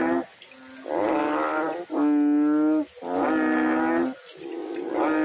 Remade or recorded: recorded